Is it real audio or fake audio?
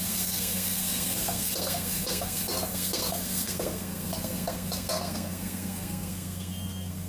fake